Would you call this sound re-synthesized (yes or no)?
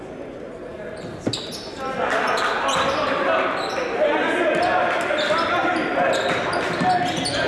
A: no